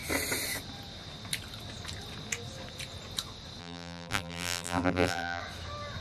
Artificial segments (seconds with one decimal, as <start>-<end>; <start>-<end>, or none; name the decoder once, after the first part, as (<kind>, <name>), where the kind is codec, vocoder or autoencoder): 3.6-5.4 (vocoder, BigVGAN v2)